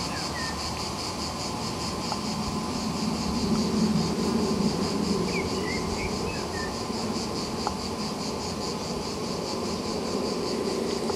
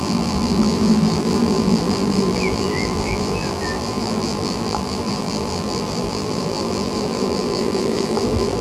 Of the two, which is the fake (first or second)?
second